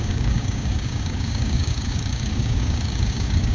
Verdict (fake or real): fake